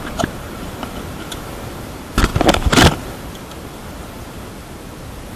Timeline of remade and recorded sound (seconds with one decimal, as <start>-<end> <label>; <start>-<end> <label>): 0.0-5.4 recorded